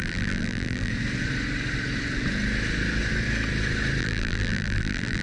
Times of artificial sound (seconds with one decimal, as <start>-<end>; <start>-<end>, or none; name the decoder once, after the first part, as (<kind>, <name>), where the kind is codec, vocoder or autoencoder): 0.0-0.9 (vocoder, BigVGAN v2); 4.0-5.2